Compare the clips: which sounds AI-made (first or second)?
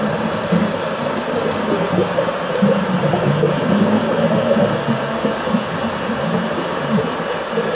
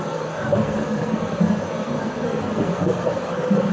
second